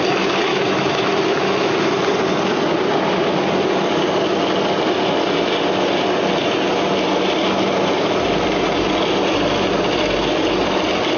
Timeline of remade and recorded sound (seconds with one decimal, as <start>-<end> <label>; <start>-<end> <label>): 0.0-0.5 recorded; 0.5-1.9 remade; 1.9-11.2 recorded